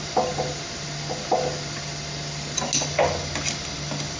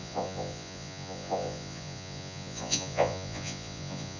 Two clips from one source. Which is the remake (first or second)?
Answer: second